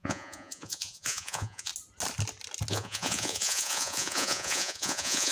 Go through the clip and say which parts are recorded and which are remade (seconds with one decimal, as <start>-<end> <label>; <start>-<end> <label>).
0.0-1.7 remade; 1.7-2.7 recorded; 2.7-5.3 remade